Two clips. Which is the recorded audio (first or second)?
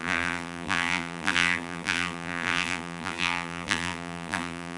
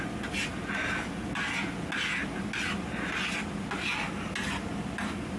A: second